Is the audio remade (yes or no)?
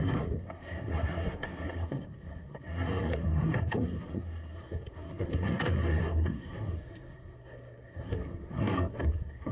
yes